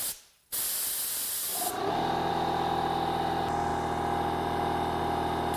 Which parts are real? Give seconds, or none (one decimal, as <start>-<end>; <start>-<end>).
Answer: 0.0-5.6